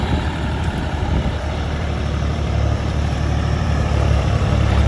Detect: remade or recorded remade